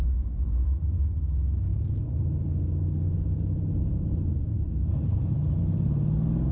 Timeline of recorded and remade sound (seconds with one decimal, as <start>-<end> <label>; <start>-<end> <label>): 0.0-1.2 remade; 1.2-1.7 recorded; 1.7-5.6 remade; 5.6-6.5 recorded